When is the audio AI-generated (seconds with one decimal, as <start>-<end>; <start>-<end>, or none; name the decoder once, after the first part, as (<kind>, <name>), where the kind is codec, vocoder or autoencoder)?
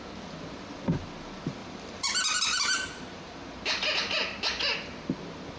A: 1.6-3.4 (vocoder, BigVGAN v2)